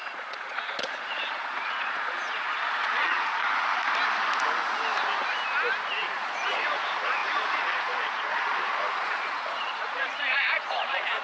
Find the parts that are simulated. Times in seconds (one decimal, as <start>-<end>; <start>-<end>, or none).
0.0-3.4; 6.0-11.2